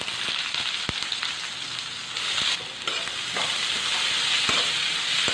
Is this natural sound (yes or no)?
yes